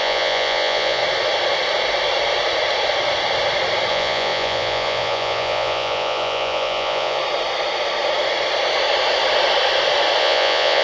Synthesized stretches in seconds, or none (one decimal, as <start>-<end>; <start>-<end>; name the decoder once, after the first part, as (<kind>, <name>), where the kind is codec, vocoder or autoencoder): 0.0-1.0 (vocoder, Vocos); 3.9-7.2; 10.2-10.8